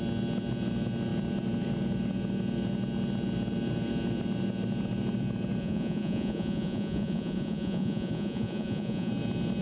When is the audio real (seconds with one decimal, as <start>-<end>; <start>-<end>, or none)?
0.0-5.6; 9.1-9.6